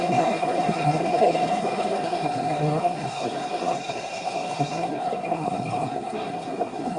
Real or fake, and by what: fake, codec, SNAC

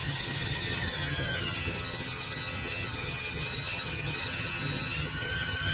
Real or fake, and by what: fake, vocoder, HiFi-GAN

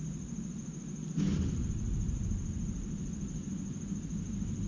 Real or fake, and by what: real